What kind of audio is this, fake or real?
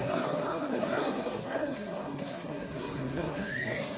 fake